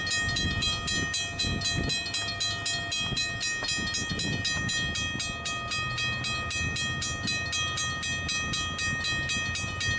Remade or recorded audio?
recorded